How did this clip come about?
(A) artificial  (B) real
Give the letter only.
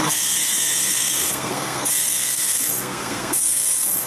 A